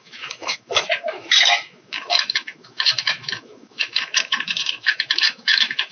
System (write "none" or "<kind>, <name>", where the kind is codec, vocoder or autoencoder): autoencoder, DAC-VAE